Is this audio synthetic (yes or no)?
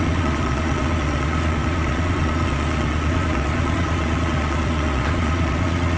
yes